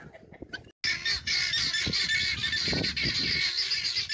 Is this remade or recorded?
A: recorded